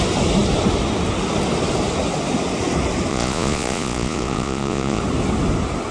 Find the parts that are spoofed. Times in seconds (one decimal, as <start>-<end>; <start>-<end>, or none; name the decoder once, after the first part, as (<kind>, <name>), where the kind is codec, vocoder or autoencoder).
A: 3.1-5.0 (vocoder, Vocos)